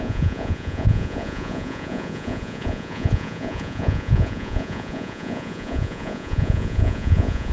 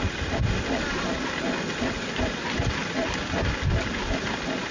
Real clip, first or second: second